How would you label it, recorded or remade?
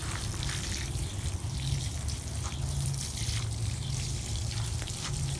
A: remade